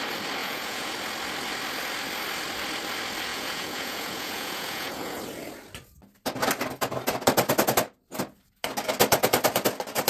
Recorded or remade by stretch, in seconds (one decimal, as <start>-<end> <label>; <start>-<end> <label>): 0.0-0.4 recorded; 0.4-0.9 remade; 0.9-3.3 recorded; 3.3-5.2 remade; 5.2-10.1 recorded